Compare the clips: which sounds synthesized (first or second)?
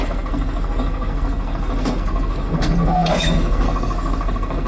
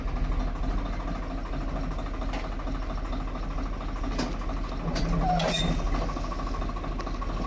first